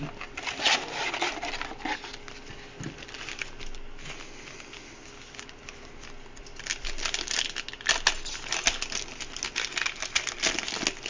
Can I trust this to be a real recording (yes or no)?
yes